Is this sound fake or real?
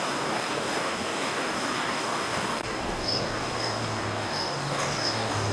fake